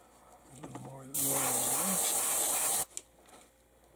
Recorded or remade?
recorded